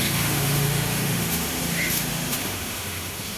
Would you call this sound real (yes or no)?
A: no